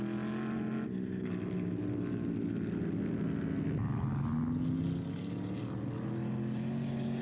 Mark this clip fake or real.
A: real